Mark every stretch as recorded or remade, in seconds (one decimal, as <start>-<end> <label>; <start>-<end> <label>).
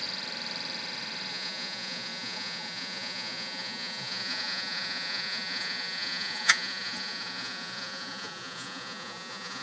0.0-1.3 recorded; 1.3-9.6 remade